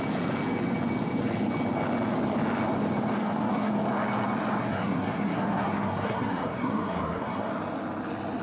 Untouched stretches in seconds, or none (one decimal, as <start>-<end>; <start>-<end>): 0.0-3.2; 3.7-4.7; 7.5-8.4